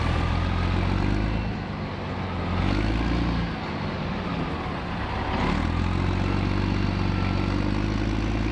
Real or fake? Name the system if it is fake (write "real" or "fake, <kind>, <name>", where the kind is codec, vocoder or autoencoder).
real